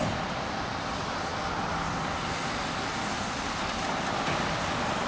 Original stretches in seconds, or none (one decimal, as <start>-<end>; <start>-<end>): 0.0-5.1